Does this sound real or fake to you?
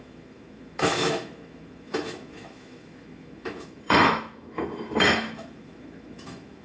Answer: fake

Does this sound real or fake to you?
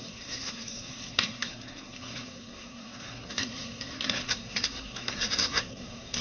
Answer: fake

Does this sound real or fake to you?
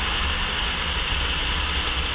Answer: real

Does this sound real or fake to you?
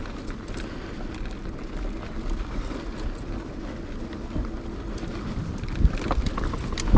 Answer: real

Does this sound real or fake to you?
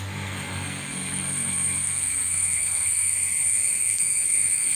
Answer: fake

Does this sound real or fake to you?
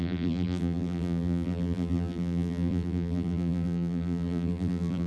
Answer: fake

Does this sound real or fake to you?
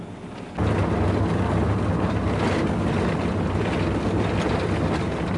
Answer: real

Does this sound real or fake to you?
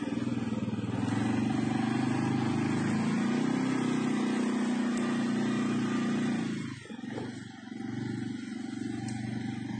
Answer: real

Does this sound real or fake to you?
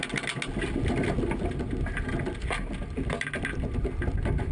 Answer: real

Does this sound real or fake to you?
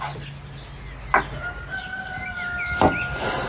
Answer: real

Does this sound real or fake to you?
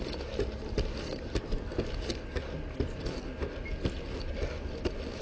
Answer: real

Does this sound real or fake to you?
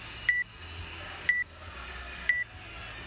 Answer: real